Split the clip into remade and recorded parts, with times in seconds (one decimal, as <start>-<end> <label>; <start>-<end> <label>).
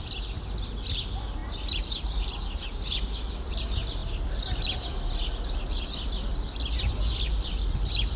0.0-8.2 recorded